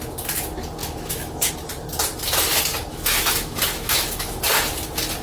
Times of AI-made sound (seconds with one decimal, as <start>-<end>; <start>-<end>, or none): 0.8-1.5; 2.9-4.3